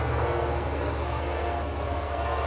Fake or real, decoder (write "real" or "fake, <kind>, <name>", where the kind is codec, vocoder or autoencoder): fake, codec, SNAC